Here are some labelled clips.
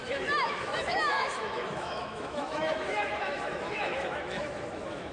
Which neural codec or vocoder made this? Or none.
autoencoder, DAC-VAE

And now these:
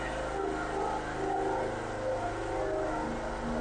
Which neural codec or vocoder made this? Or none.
none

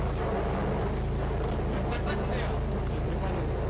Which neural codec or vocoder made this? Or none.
none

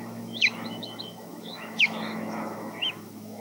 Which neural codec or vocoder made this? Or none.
autoencoder, DAC-VAE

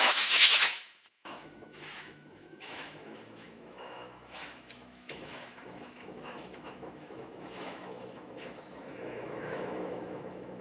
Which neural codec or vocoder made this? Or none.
autoencoder, DAC-VAE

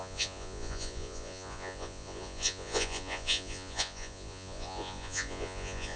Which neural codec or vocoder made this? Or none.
vocoder, Vocos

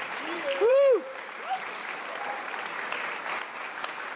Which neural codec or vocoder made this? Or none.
vocoder, BigVGAN v2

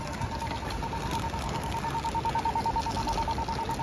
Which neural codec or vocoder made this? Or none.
none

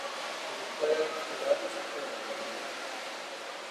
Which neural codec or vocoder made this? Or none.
none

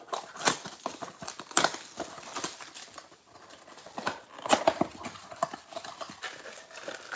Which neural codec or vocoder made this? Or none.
none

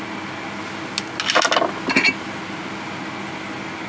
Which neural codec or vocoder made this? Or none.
none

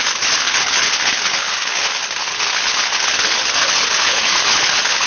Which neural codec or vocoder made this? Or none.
codec, HILCodec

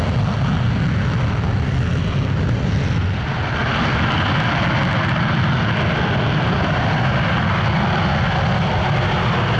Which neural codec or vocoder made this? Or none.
none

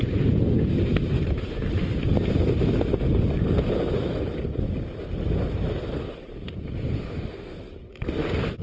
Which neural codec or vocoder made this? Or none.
none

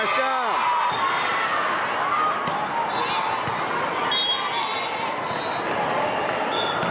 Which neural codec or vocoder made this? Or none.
none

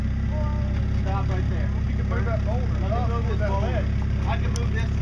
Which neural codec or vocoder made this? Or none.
none